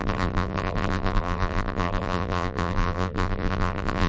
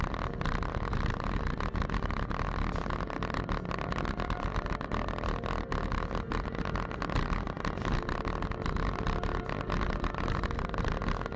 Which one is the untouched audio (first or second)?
second